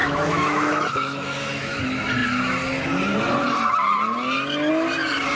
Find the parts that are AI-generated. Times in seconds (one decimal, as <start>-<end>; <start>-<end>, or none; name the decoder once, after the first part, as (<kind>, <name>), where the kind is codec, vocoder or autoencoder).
0.0-1.8 (autoencoder, DAC-VAE)

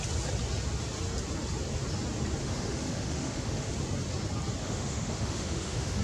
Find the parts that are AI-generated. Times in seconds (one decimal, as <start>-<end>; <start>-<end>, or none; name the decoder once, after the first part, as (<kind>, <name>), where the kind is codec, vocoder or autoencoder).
2.4-3.7 (autoencoder, DAC-VAE); 4.6-6.0

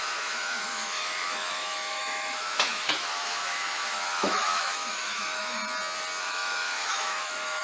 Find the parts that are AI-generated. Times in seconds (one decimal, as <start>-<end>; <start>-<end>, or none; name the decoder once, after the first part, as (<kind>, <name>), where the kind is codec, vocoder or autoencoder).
0.0-5.6 (autoencoder, DAC-VAE); 6.2-7.6

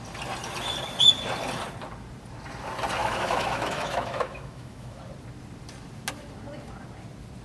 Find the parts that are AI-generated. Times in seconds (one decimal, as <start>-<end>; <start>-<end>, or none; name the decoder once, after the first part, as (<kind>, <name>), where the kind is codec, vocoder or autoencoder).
3.0-5.0 (autoencoder, DAC-VAE)

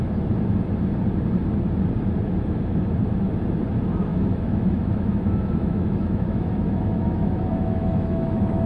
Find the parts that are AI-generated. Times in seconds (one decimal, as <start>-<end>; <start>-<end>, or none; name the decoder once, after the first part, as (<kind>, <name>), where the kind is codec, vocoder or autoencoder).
4.1-8.7 (autoencoder, DAC-VAE)

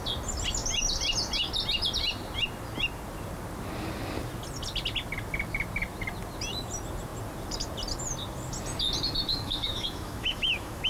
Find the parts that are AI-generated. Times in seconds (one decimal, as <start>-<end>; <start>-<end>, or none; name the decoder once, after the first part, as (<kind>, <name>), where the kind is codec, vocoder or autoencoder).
9.3-10.9 (autoencoder, DAC-VAE)